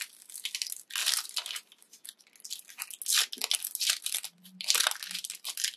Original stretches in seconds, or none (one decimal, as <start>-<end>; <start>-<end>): 0.0-1.0; 2.2-5.8